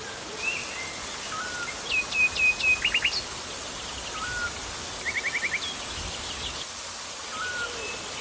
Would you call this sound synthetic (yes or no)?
no